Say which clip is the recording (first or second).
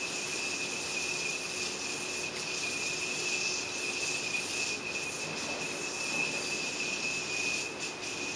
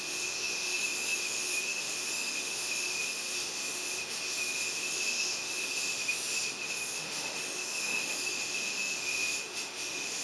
first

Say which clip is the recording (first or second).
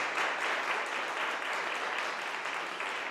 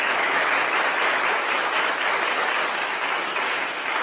first